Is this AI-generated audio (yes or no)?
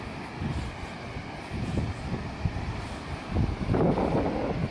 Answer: no